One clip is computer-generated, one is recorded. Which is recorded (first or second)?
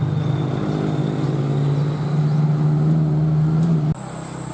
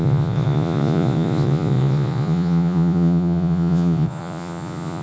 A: first